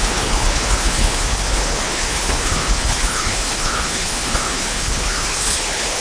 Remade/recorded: remade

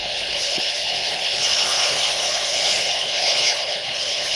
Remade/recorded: remade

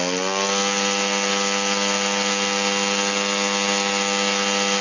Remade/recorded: recorded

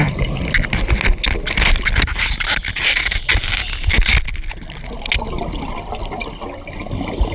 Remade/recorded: recorded